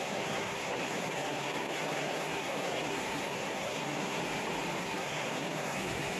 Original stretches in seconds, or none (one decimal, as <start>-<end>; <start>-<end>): 4.2-4.8